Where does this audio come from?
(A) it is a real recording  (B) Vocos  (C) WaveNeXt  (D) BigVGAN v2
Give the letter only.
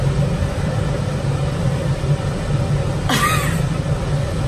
D